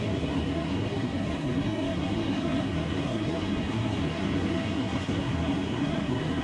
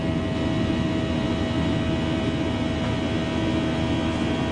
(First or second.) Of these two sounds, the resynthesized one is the first